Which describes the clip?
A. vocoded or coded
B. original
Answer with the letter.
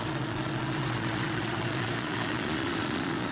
A